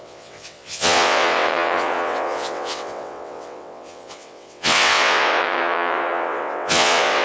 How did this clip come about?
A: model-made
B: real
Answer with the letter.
A